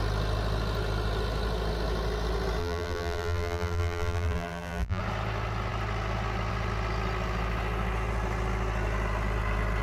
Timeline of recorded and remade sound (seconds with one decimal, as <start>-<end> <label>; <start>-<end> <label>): 0.0-2.6 recorded; 2.6-5.0 remade; 5.0-9.8 recorded